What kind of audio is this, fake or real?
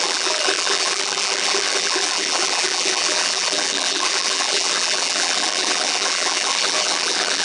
fake